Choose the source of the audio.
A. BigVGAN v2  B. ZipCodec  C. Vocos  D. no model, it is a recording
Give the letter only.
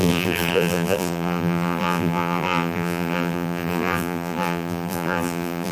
A